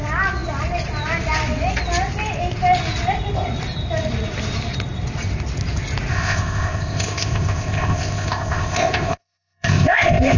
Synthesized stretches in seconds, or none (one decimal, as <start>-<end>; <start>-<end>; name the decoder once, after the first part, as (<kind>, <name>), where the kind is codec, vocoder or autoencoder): 6.1-10.4 (codec, ZipCodec)